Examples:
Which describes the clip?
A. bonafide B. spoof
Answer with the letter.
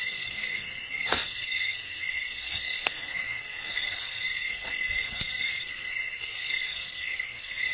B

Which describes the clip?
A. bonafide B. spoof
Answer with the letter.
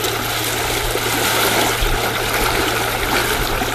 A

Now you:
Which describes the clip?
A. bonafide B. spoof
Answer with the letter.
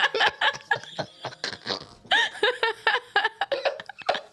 A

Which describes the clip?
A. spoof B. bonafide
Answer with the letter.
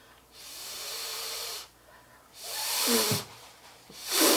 A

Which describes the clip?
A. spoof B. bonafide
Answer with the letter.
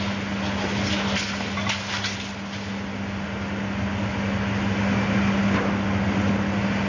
B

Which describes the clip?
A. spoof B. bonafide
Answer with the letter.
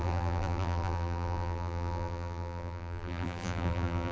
A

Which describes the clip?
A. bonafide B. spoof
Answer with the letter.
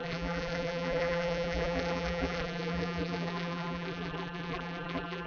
B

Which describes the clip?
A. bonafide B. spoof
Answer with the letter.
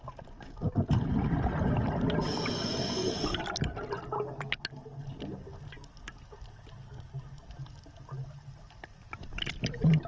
A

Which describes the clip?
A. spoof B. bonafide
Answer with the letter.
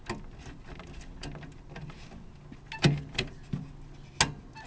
B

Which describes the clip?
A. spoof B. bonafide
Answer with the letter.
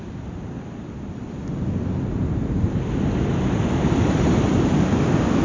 B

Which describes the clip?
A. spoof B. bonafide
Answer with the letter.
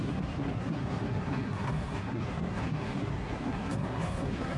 A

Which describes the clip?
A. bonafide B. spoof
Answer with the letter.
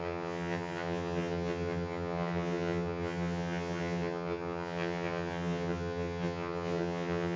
B